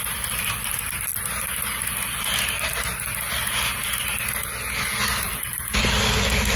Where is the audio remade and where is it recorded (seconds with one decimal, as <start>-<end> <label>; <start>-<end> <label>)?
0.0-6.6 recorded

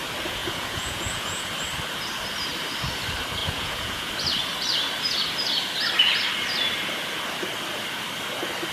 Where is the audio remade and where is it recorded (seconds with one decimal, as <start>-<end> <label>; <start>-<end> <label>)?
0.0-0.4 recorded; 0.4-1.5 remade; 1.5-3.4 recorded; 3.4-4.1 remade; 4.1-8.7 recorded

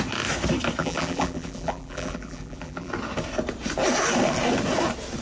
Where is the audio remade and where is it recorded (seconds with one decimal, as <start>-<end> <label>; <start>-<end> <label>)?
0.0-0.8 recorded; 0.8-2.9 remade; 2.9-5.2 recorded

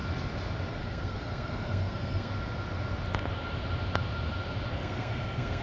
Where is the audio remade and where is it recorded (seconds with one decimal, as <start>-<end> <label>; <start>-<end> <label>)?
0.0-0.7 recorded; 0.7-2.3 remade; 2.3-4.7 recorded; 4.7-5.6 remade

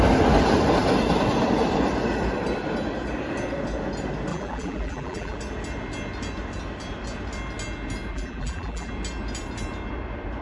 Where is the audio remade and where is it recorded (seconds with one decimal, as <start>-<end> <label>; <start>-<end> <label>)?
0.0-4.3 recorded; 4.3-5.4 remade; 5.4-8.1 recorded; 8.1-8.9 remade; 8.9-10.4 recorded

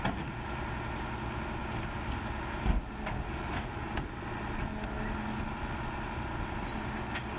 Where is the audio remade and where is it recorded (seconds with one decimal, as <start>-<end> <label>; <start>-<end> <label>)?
0.0-7.4 recorded

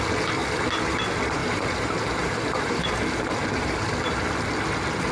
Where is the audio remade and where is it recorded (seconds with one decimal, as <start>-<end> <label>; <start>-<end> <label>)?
0.0-1.4 recorded; 1.4-3.8 remade; 3.8-5.1 recorded

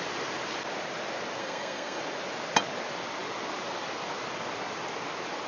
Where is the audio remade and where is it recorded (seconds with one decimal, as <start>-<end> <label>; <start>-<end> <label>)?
0.0-1.4 recorded; 1.4-2.0 remade; 2.0-5.5 recorded